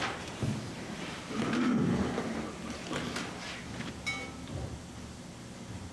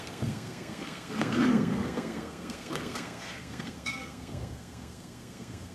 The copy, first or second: second